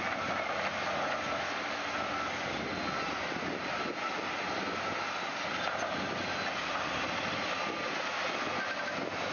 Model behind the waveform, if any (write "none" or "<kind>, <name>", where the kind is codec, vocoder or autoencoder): none